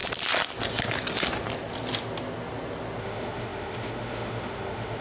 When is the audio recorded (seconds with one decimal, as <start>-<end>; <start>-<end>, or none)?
0.0-3.0